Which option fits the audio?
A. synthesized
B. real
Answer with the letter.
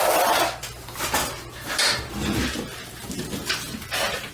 B